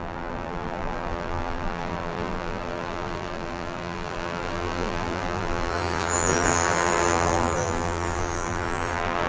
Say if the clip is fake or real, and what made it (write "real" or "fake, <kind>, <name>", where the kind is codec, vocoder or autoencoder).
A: fake, vocoder, BigVGAN v2